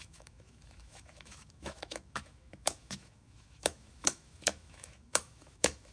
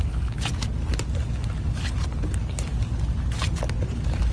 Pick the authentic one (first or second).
second